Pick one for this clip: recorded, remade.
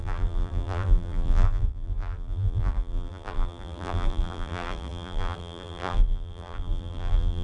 remade